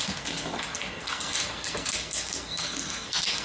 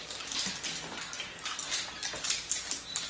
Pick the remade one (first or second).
first